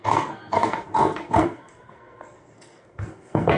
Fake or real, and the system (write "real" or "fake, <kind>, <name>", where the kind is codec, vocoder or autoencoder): fake, codec, SNAC